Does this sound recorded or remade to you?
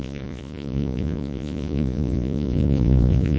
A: remade